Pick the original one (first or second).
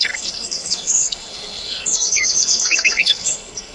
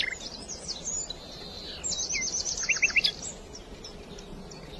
second